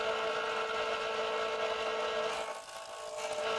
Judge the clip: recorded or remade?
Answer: recorded